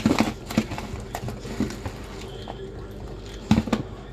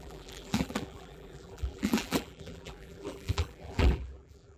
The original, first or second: first